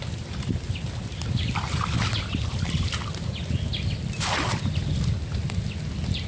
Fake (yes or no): no